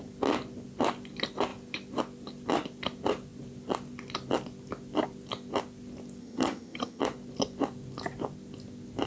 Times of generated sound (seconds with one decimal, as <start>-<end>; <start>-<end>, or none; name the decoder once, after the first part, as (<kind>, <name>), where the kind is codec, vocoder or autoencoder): 6.2-7.0 (vocoder, HiFi-GAN)